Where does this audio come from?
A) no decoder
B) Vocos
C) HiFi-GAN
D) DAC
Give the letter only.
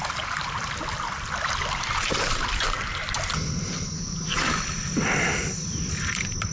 A